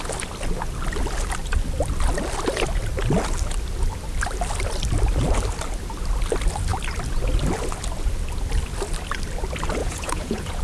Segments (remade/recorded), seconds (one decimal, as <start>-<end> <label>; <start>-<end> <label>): 0.0-9.8 recorded; 9.8-10.6 remade